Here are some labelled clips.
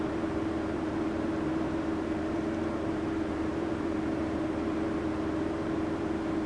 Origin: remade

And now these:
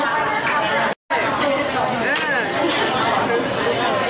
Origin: recorded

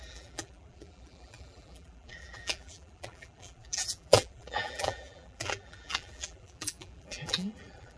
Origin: remade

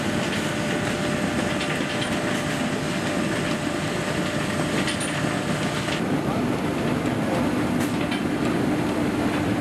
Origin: recorded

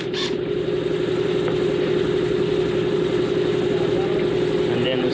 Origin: recorded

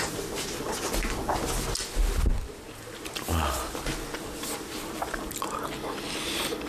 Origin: recorded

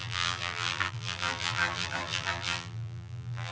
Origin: remade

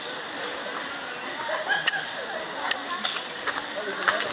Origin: recorded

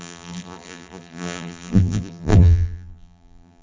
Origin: remade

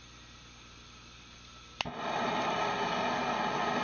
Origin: recorded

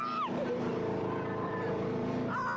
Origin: remade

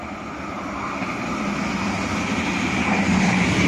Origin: recorded